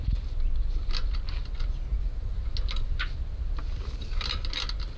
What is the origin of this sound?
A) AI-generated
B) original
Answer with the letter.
B